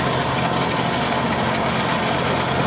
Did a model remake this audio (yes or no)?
no